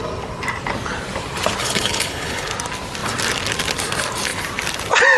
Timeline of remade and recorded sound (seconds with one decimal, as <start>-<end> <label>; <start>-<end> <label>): 0.0-1.6 recorded; 1.6-2.5 remade; 2.5-5.2 recorded